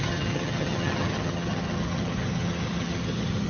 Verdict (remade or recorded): remade